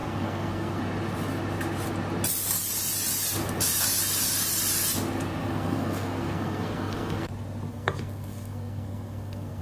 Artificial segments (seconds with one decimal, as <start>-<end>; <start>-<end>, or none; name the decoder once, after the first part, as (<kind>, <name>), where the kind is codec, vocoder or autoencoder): 0.0-0.8 (codec, SNAC); 5.4-7.3; 7.7-9.6